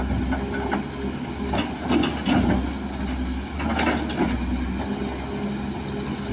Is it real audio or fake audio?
real